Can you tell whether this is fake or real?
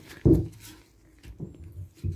real